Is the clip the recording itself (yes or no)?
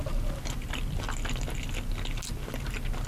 yes